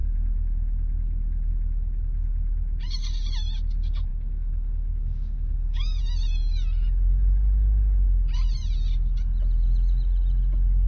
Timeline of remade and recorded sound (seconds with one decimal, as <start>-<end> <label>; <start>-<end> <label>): 0.0-4.1 recorded; 4.1-6.0 remade; 6.0-10.9 recorded